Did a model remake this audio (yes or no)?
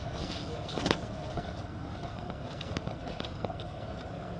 yes